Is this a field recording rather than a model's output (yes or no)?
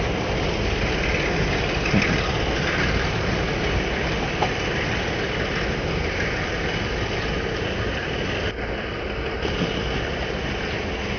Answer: no